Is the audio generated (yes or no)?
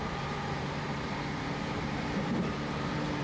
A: yes